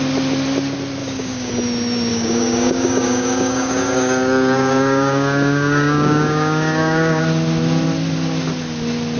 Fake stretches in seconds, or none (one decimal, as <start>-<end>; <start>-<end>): 1.0-1.5; 2.1-7.2